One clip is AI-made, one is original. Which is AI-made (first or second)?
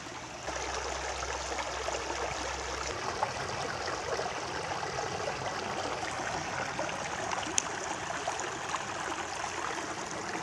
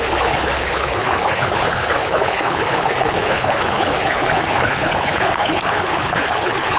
second